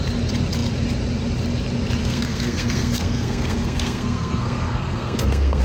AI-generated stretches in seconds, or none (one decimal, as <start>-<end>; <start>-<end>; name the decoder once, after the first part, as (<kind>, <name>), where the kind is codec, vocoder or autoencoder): 2.0-5.6 (codec, SNAC)